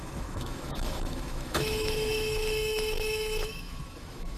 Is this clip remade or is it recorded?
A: remade